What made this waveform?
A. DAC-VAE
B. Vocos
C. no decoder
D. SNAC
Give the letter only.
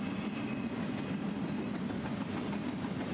C